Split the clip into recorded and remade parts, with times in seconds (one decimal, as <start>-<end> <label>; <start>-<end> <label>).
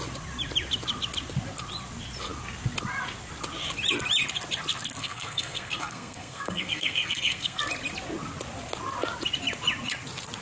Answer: 0.0-5.0 recorded; 5.0-7.6 remade; 7.6-10.4 recorded